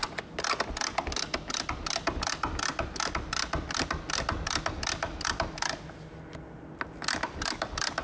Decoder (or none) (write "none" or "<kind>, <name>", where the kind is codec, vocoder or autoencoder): none